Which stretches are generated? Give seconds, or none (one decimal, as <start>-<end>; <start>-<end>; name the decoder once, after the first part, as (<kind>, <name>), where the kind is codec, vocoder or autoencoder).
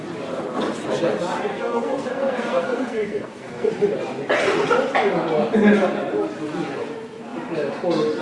1.5-3.7 (codec, SNAC)